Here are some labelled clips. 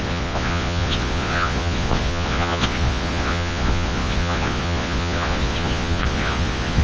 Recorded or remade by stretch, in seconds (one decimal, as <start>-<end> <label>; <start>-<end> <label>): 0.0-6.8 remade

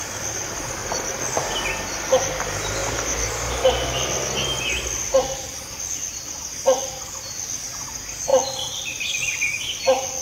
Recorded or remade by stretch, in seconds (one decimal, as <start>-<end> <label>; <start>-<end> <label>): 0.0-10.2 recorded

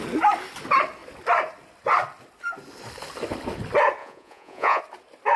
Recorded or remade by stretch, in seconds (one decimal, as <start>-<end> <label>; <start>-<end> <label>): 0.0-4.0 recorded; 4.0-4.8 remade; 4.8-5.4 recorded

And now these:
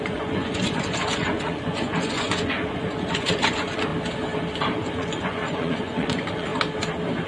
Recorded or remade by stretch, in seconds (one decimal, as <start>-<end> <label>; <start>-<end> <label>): 0.0-3.9 remade; 3.9-4.9 recorded; 4.9-6.5 remade; 6.5-7.3 recorded

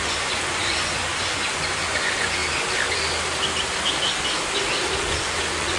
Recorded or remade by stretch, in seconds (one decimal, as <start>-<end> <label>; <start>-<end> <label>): 0.0-2.4 remade; 2.4-5.0 recorded; 5.0-5.8 remade

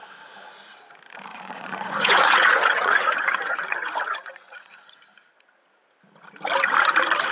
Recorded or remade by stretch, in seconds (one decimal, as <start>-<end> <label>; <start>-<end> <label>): 0.0-1.3 recorded; 1.3-5.0 remade; 5.0-7.3 recorded